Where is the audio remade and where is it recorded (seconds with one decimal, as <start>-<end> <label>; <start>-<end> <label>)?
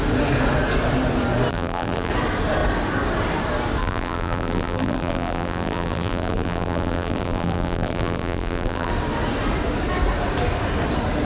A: 0.0-1.5 recorded; 1.5-2.1 remade; 2.1-3.8 recorded; 3.8-8.9 remade; 8.9-11.2 recorded